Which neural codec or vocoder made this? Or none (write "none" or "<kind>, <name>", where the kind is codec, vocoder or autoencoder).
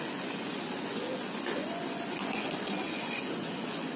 vocoder, Vocos